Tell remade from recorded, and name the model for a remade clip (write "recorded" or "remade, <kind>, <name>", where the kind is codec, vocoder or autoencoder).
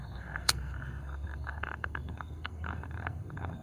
remade, codec, SNAC